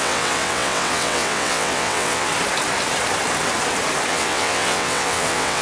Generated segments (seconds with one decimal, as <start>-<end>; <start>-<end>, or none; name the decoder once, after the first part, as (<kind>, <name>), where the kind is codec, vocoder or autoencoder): 0.0-2.3 (vocoder, WaveNeXt); 4.1-5.6